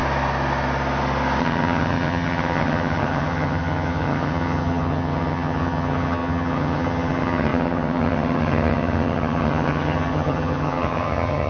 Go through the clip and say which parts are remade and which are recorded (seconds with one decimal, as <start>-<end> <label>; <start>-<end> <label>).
0.0-1.4 recorded; 1.4-11.5 remade

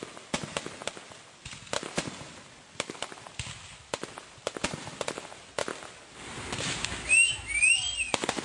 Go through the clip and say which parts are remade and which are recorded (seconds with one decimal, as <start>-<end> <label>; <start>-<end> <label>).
0.0-8.4 recorded

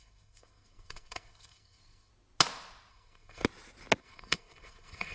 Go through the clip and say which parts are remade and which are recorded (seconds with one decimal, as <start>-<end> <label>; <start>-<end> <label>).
0.0-2.1 remade; 2.1-2.9 recorded; 2.9-3.4 remade; 3.4-4.0 recorded; 4.0-5.1 remade

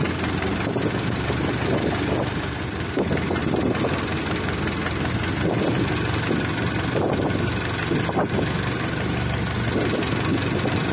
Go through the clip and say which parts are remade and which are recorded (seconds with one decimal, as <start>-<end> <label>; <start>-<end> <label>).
0.0-10.9 recorded

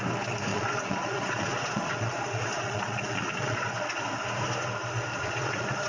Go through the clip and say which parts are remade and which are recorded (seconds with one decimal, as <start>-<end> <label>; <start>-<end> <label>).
0.0-0.5 recorded; 0.5-4.0 remade; 4.0-5.1 recorded; 5.1-5.9 remade